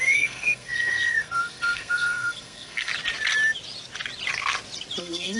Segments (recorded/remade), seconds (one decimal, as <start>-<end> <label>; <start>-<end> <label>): 0.0-2.9 remade; 2.9-5.0 recorded; 5.0-5.4 remade